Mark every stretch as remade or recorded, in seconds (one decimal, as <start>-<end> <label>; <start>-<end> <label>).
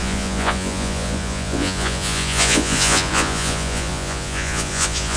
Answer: 0.0-5.2 remade